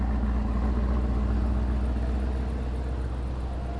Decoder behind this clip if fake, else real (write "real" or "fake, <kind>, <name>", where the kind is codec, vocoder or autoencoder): real